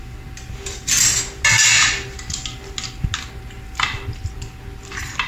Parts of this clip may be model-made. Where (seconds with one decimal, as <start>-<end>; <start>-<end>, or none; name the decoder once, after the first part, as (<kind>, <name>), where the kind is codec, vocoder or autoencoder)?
none